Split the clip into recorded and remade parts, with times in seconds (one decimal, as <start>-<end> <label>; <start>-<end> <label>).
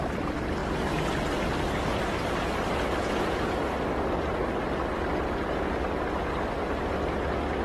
0.0-3.0 recorded; 3.0-3.6 remade; 3.6-7.6 recorded